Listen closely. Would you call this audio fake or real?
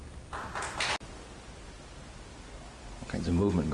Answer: real